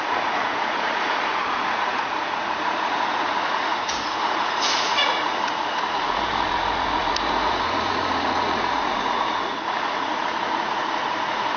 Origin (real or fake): fake